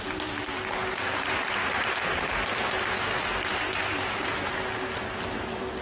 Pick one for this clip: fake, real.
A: real